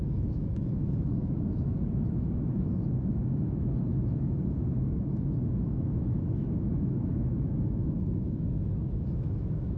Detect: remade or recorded remade